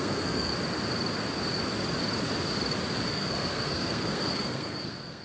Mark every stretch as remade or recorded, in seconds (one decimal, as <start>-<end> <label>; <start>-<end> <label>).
0.0-0.5 remade; 0.5-3.1 recorded; 3.1-5.2 remade